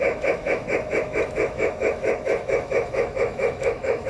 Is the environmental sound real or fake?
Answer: fake